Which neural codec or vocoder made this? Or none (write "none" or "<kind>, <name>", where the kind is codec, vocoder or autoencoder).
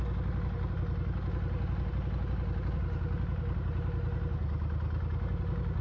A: none